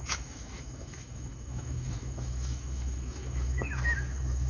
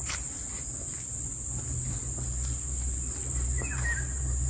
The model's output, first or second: first